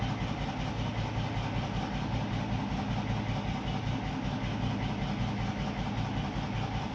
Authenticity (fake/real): real